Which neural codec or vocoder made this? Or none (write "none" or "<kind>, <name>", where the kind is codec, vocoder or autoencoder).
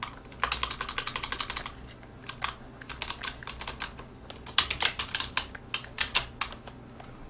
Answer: none